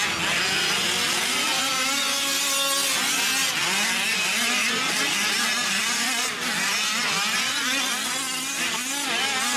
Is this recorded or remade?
recorded